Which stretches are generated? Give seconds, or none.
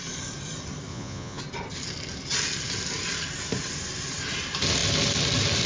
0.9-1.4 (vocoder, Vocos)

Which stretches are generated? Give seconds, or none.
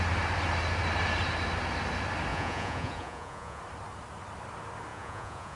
2.3-3.6 (vocoder, Vocos); 4.9-5.6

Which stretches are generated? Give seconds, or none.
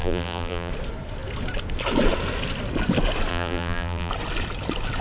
0.0-0.7 (vocoder, BigVGAN v2); 3.3-4.1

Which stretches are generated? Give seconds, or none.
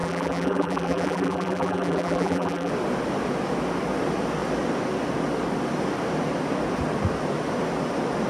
0.0-2.7 (vocoder, BigVGAN v2)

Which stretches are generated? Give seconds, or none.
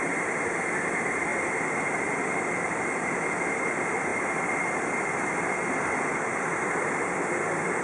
0.0-7.8 (vocoder, BigVGAN v2)